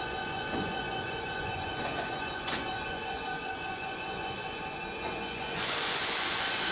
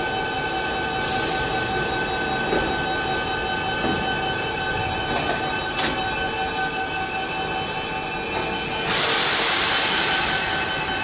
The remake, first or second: first